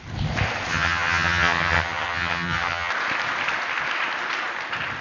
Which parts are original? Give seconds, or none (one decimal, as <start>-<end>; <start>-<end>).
0.0-0.7; 2.9-5.0

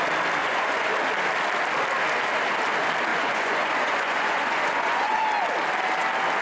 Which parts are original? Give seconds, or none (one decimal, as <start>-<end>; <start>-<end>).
0.0-0.4; 0.9-3.1; 5.2-6.4

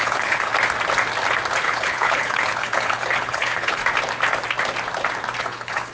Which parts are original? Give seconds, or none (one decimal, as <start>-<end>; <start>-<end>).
0.5-1.6; 3.8-5.4

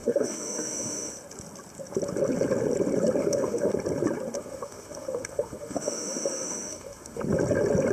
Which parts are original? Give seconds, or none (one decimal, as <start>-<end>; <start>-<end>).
1.1-3.2; 3.7-4.4; 7.2-7.9